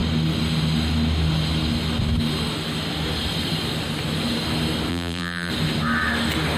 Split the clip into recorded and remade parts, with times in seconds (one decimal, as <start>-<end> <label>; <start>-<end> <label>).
0.0-4.9 recorded; 4.9-5.5 remade; 5.5-6.6 recorded